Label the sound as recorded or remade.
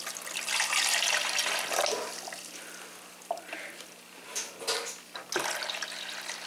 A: recorded